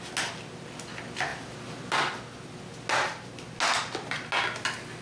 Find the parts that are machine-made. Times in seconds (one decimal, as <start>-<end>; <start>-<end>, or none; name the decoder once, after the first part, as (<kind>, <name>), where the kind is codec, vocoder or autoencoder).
none